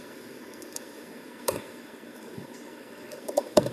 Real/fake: fake